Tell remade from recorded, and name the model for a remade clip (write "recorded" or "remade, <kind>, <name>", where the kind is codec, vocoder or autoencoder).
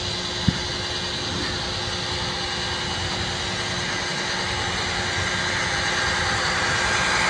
recorded